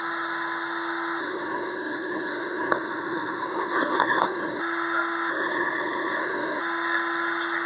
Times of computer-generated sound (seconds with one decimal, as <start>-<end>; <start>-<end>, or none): 1.2-4.6; 5.3-6.6